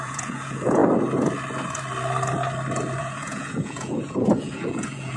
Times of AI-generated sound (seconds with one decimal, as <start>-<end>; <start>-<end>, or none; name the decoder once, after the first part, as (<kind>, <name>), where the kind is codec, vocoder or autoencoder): 0.0-0.8 (vocoder, Vocos); 3.0-5.2